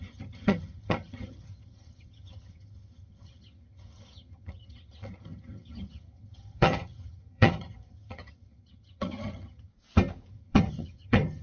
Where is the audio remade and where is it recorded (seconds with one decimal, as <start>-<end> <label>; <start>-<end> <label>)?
0.0-9.7 remade; 9.7-10.3 recorded; 10.3-11.4 remade